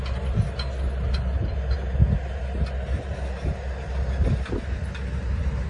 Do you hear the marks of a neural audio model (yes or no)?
no